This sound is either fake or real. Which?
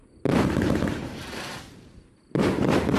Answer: fake